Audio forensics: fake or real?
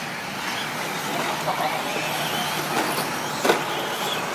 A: real